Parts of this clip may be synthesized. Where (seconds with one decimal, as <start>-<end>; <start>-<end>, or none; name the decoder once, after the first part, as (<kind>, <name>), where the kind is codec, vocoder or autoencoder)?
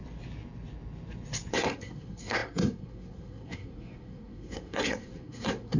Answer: 1.5-5.8 (codec, SNAC)